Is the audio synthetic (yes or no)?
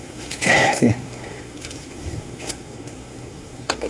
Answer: yes